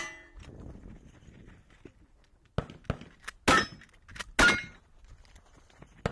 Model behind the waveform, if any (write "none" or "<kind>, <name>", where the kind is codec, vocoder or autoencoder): none